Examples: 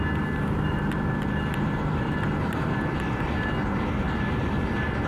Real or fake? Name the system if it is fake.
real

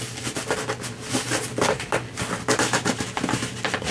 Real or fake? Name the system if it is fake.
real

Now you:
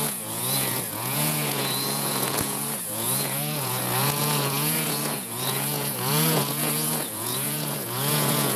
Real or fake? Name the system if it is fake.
fake, vocoder, Vocos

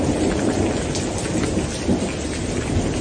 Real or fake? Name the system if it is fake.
real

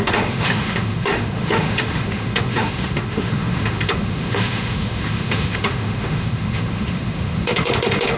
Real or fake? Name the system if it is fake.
fake, autoencoder, DAC-VAE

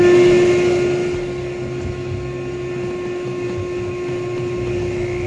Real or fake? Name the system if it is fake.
real